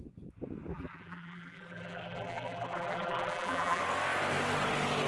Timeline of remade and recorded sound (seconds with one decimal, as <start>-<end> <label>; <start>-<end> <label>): 0.0-0.7 recorded; 0.7-3.8 remade; 3.8-5.1 recorded